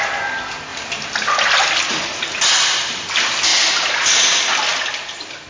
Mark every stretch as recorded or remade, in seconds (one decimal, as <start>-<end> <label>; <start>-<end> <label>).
0.0-5.5 recorded